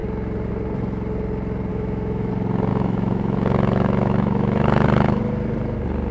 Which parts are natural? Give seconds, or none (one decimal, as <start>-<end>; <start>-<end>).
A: 0.0-1.7; 2.3-2.7; 5.2-6.1